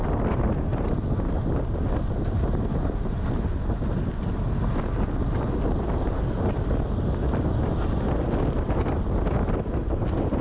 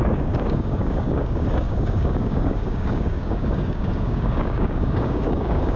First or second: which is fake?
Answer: second